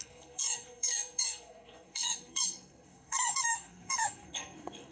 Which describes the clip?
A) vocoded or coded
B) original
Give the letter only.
A